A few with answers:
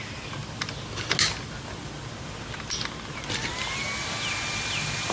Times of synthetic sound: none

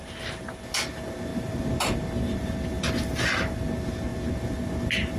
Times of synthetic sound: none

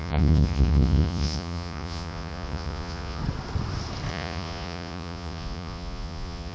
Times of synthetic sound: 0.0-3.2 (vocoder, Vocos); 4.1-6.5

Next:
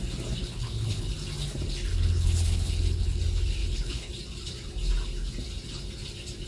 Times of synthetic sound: 0.4-1.1 (codec, HILCodec); 1.9-3.2; 3.6-4.1

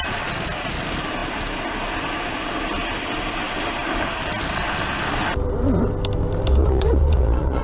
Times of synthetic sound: 6.6-7.6 (vocoder, Vocos)

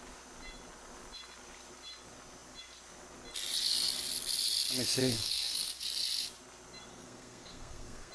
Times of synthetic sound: 5.0-5.8 (codec, SNAC); 6.9-8.1